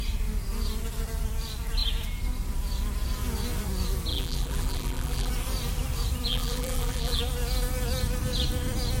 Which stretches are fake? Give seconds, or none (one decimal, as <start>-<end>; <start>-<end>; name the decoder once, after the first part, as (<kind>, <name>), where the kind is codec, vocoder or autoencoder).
4.1-5.3 (vocoder, BigVGAN v2); 6.3-7.2